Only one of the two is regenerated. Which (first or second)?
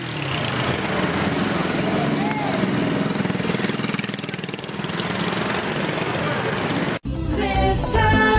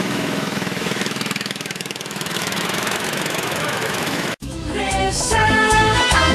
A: second